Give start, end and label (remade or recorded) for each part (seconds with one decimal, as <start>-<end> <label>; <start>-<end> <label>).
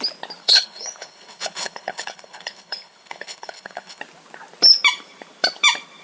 0.0-0.4 recorded; 0.4-4.0 remade; 4.0-6.0 recorded